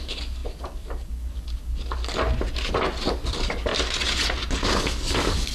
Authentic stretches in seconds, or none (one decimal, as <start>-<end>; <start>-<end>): 2.1-3.1; 3.7-4.5